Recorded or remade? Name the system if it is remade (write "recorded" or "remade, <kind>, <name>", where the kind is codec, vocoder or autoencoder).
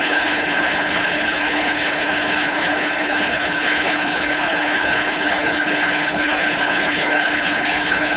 remade, codec, HILCodec